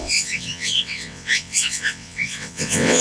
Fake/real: fake